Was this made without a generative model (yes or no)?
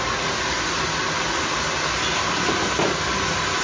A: yes